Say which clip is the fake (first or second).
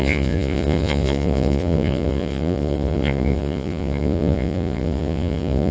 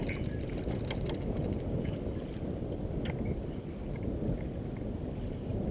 first